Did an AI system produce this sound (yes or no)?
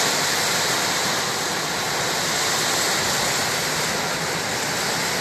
no